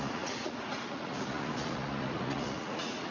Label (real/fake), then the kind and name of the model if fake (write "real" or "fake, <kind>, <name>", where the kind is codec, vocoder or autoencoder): fake, vocoder, Vocos